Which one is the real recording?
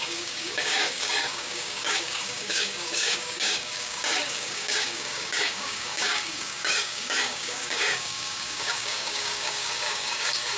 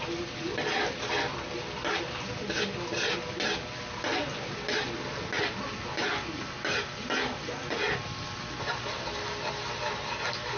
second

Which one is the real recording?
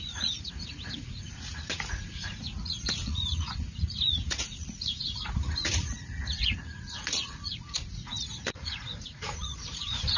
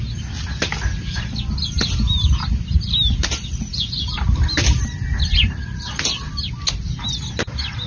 second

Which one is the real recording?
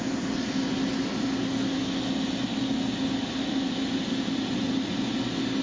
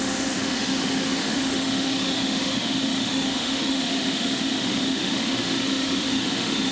first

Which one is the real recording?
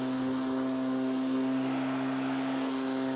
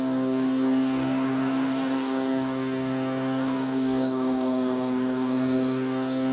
first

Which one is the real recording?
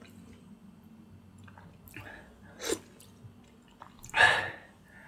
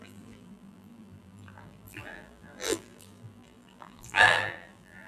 first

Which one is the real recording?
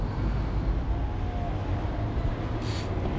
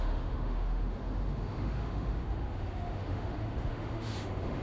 first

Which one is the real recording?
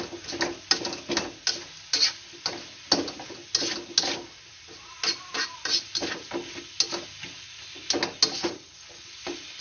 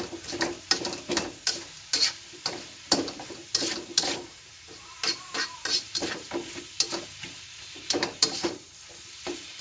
first